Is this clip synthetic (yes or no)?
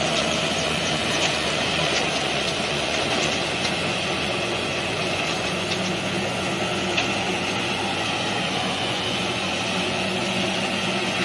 yes